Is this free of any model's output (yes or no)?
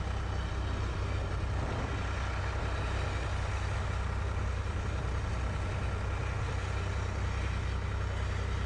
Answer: yes